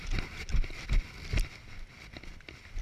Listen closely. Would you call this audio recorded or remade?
recorded